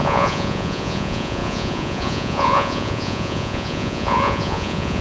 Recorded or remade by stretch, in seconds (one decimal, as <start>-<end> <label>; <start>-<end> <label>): 0.0-5.0 remade